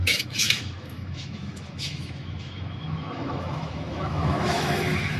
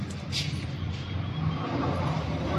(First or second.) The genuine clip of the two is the second